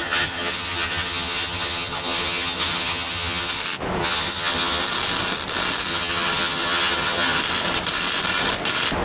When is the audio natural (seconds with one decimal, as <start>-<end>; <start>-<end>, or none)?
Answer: 3.6-4.0; 4.8-5.9; 7.4-9.0